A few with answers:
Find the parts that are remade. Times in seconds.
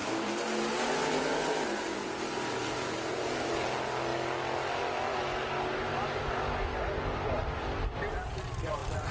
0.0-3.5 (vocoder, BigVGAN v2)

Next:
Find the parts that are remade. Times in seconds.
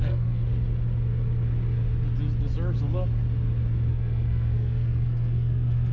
0.0-0.4 (codec, SNAC); 3.9-5.9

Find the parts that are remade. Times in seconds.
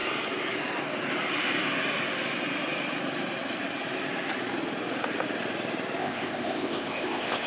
6.0-7.5 (codec, ZipCodec)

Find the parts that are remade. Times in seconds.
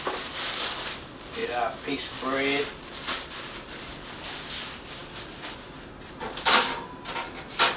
none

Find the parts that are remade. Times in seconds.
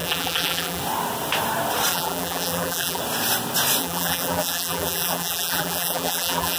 0.0-0.8 (vocoder, BigVGAN v2); 1.9-3.0; 3.8-6.6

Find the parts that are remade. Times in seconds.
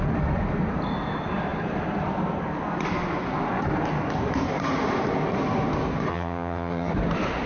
6.1-6.9 (vocoder, HiFi-GAN)